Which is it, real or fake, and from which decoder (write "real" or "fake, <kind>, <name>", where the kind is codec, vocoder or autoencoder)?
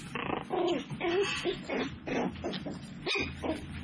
real